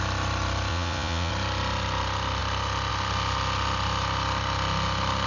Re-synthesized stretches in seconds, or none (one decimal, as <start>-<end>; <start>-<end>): 0.7-1.3